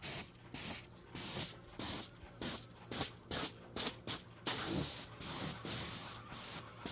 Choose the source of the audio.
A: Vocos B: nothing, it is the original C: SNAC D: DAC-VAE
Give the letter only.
B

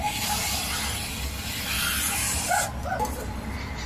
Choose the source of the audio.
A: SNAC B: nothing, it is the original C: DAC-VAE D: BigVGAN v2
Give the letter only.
B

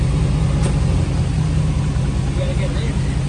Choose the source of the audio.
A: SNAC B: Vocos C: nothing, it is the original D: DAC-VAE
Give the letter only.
C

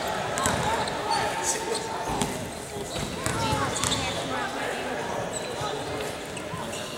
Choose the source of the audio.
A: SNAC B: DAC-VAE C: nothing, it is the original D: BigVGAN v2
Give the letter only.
C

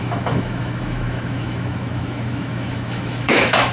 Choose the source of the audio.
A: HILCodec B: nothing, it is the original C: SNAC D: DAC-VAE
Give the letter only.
D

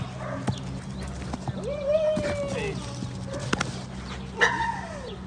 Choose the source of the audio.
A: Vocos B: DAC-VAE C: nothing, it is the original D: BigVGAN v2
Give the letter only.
C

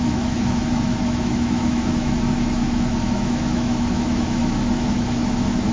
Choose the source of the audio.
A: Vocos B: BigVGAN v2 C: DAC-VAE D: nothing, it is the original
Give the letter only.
C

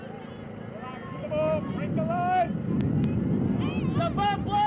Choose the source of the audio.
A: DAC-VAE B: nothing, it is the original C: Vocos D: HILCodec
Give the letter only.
B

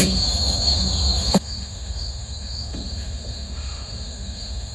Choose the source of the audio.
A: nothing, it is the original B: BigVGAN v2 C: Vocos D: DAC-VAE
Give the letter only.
D